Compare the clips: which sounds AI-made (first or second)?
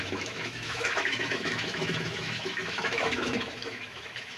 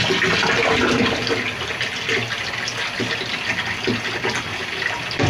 first